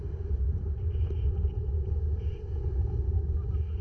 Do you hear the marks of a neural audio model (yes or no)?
no